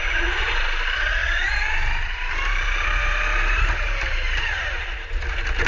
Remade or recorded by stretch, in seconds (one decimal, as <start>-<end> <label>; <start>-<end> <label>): 0.0-1.2 recorded; 1.2-4.6 remade; 4.6-5.7 recorded